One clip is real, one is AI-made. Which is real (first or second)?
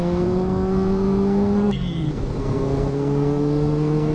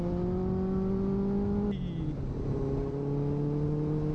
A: second